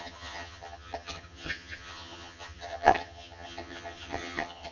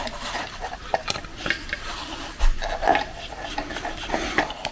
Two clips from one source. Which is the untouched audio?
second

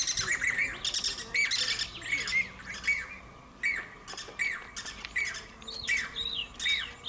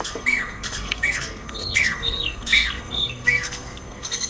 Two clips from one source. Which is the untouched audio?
first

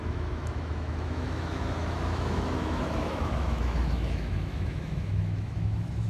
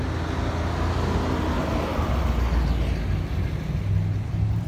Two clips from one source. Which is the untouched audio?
second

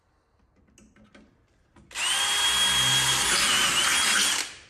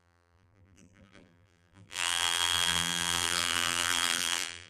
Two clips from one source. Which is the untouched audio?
first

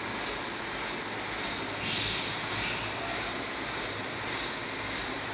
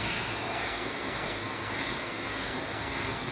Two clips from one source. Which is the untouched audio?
first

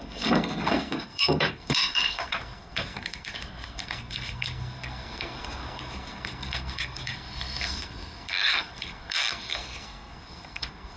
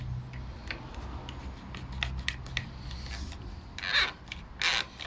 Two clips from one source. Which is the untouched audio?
second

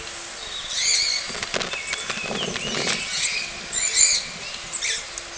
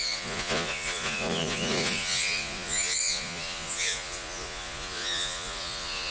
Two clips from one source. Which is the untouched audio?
first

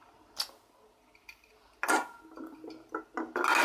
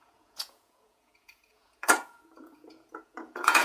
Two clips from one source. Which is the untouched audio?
first